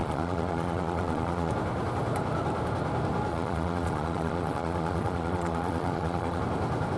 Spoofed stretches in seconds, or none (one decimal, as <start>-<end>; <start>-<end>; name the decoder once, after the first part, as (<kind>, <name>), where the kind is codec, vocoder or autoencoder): 0.0-1.5 (vocoder, Vocos); 3.3-6.4